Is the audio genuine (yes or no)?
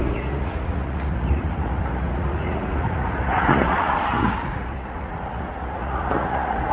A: no